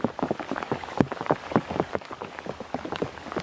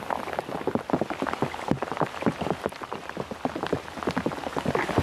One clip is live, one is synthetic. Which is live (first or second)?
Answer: second